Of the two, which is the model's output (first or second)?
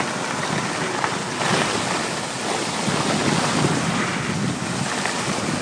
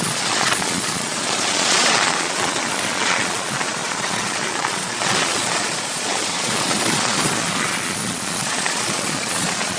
second